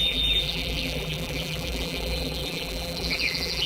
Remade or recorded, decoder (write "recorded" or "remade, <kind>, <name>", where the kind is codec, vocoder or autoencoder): remade, vocoder, BigVGAN v2